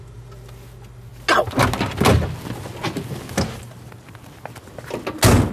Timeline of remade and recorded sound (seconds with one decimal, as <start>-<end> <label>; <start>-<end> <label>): 0.0-5.5 recorded